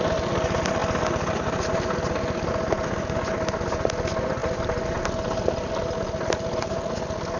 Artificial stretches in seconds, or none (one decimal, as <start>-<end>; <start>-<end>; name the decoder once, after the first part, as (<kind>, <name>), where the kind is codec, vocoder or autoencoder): 4.4-5.0 (vocoder, BigVGAN v2)